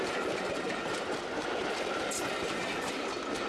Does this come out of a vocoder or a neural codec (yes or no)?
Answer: no